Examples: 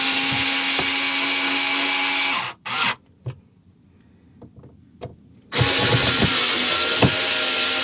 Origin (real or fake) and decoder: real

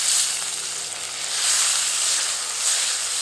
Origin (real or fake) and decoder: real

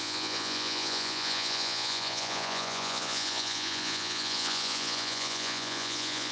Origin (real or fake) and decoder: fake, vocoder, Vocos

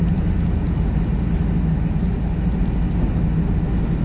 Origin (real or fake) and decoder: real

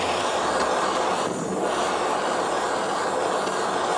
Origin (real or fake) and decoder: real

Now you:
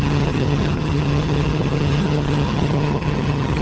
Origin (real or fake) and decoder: fake, vocoder, HiFi-GAN